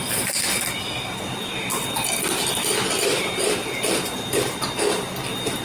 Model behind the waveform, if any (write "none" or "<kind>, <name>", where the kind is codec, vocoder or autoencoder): none